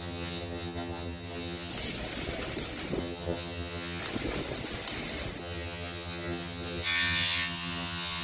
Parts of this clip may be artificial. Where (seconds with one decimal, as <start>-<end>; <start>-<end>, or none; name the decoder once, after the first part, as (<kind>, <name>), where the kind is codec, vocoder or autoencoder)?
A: 0.0-1.7 (vocoder, HiFi-GAN); 3.0-4.0; 5.4-8.2

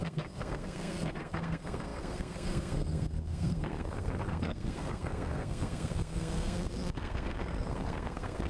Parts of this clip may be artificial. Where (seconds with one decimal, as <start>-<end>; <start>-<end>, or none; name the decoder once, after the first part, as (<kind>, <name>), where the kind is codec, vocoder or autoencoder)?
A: 0.0-8.5 (codec, SNAC)

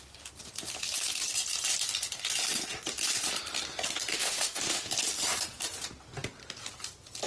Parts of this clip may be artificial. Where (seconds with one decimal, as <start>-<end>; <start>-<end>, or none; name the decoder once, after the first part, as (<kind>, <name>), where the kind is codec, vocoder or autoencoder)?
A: 4.1-4.9 (autoencoder, DAC-VAE)

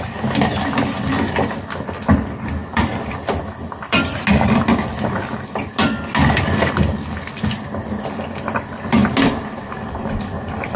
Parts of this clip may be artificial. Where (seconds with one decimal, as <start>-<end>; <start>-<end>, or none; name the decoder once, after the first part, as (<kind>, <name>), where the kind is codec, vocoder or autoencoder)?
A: 2.6-4.1 (vocoder, BigVGAN v2)